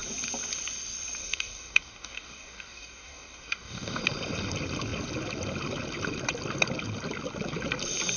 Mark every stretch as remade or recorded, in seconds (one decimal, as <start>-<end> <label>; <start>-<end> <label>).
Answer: 0.0-1.2 recorded; 1.2-4.0 remade; 4.0-8.2 recorded